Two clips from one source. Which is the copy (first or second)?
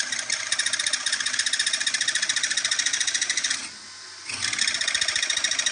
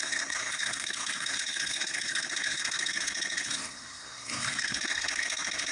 second